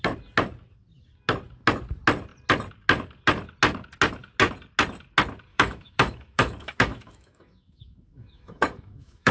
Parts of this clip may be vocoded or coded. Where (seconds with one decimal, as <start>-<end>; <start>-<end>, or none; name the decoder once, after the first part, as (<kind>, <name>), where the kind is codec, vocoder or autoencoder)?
5.5-9.3 (autoencoder, DAC-VAE)